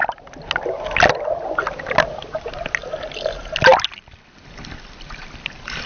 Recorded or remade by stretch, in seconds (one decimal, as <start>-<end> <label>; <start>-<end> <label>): 0.0-5.9 recorded